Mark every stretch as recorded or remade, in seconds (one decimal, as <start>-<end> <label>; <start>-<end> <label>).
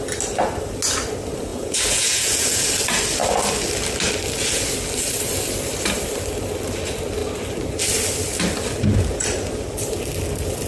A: 0.0-1.5 recorded; 1.5-2.7 remade; 2.7-10.7 recorded